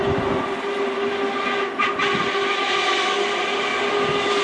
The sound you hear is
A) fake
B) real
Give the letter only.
B